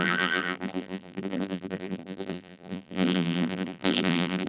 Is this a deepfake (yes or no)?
yes